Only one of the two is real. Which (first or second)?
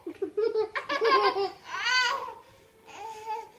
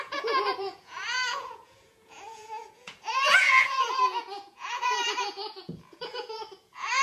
first